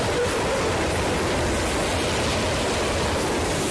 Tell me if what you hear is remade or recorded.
recorded